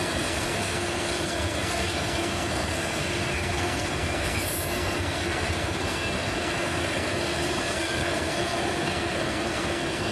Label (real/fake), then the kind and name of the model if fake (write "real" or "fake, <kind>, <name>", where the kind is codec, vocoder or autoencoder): fake, codec, SNAC